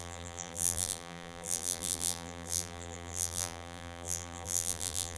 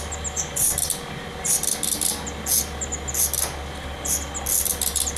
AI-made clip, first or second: first